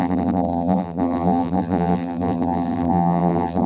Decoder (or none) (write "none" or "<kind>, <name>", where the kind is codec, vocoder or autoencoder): vocoder, BigVGAN v2